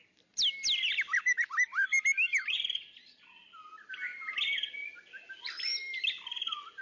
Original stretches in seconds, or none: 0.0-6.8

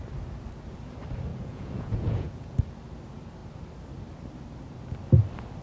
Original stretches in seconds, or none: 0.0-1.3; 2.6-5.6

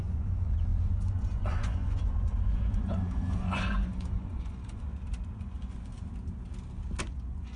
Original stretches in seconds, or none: 4.9-5.4; 5.9-7.0

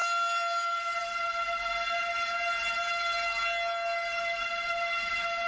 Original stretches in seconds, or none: 0.0-5.5

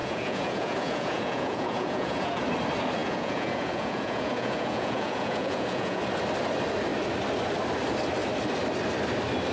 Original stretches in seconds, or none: 2.4-3.0; 6.0-9.5

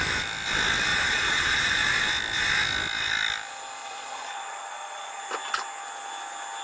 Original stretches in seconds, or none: 0.0-0.9; 1.7-3.8; 5.2-6.6

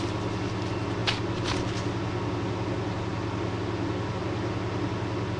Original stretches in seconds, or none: 0.0-5.4